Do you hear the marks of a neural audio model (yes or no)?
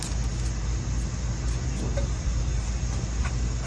no